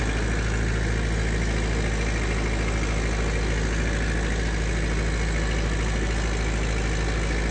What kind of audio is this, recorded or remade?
recorded